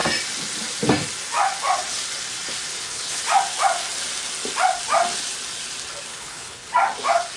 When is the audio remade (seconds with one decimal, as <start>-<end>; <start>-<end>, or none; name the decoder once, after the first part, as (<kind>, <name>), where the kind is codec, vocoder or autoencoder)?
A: 2.7-3.2 (codec, HILCodec); 6.1-6.7